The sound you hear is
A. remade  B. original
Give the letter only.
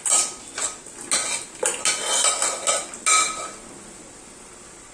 B